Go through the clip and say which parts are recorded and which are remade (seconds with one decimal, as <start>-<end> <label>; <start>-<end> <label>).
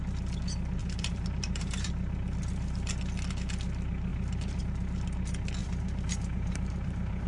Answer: 0.0-0.8 recorded; 0.8-1.9 remade; 1.9-4.1 recorded; 4.1-4.6 remade; 4.6-5.6 recorded; 5.6-7.3 remade